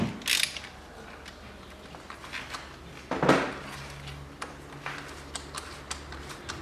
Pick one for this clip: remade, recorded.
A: recorded